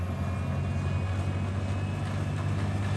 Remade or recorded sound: recorded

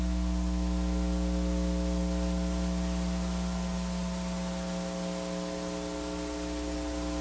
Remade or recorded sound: recorded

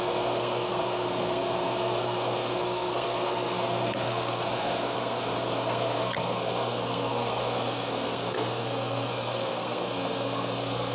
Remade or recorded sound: remade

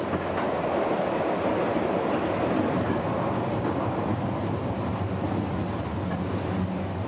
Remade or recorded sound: recorded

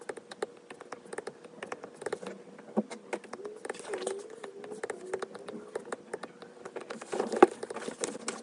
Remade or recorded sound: recorded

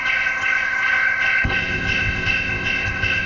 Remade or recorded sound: remade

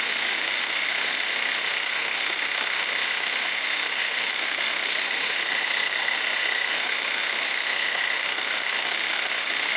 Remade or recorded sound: remade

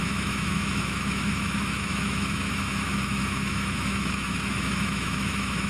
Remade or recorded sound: remade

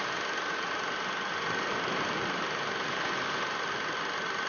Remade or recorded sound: recorded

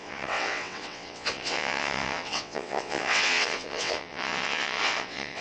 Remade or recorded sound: remade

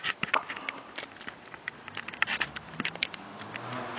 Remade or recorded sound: remade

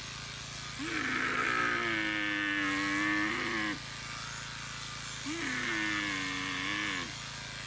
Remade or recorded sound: recorded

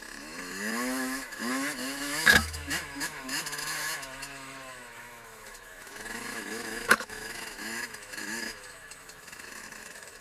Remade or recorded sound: remade